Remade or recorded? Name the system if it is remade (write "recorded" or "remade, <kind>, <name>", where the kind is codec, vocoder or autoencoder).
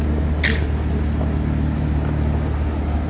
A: recorded